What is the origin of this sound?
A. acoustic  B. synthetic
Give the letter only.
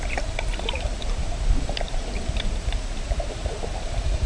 B